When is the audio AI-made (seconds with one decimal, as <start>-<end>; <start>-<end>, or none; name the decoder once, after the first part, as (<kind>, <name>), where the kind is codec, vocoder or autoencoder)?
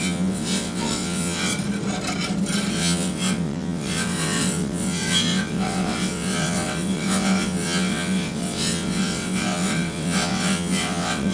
0.0-1.5 (vocoder, WaveNeXt); 2.7-11.3